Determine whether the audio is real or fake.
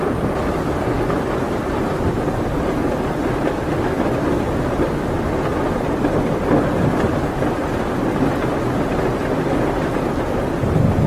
real